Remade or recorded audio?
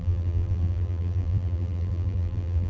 remade